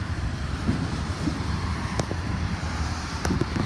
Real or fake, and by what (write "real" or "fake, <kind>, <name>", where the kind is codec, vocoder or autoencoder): real